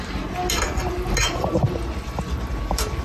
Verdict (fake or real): real